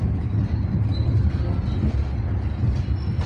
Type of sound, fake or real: real